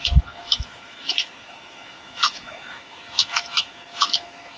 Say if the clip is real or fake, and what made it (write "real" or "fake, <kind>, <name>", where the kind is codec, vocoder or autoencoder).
fake, autoencoder, DAC-VAE